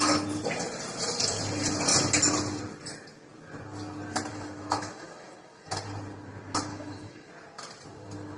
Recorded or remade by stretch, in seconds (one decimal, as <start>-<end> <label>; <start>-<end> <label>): 0.0-4.3 recorded; 4.3-5.7 remade; 5.7-6.7 recorded; 6.7-7.3 remade; 7.3-8.4 recorded